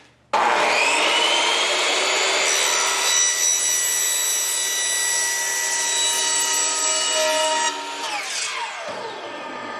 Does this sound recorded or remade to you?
recorded